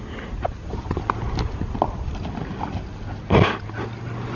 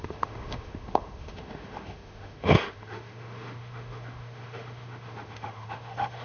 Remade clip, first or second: second